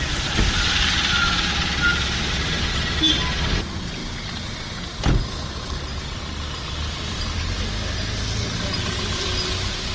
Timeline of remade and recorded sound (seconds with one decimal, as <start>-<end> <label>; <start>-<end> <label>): 0.0-4.0 recorded; 4.0-7.6 remade; 7.6-9.9 recorded